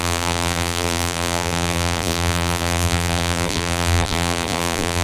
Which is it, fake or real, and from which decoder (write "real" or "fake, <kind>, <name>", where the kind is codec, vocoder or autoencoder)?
fake, vocoder, BigVGAN v2